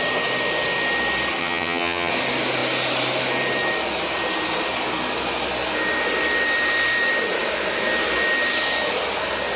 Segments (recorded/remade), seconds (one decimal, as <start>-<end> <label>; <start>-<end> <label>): 0.0-1.4 recorded; 1.4-2.1 remade; 2.1-9.6 recorded